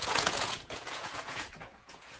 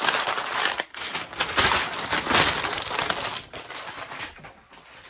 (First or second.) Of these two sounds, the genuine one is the second